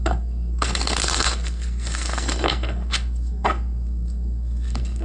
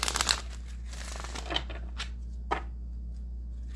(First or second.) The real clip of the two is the second